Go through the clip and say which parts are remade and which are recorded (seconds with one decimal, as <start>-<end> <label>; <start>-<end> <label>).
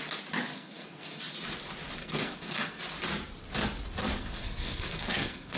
0.0-0.5 recorded; 0.5-1.2 remade; 1.2-2.0 recorded; 2.0-2.8 remade; 2.8-4.0 recorded; 4.0-5.6 remade